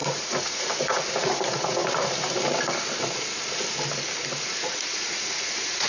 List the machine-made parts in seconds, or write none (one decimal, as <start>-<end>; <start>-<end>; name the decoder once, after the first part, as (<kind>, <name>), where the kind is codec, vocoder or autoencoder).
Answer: 0.0-1.8 (vocoder, Vocos); 4.4-5.9